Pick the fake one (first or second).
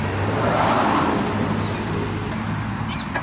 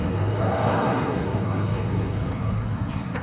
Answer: second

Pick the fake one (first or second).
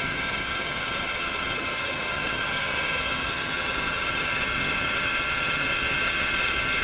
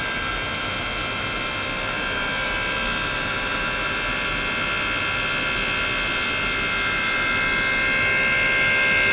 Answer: first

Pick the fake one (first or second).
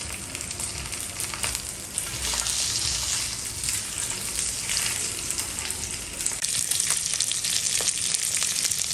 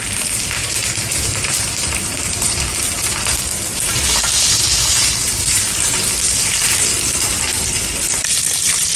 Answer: second